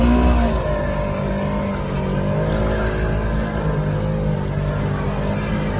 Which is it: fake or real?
real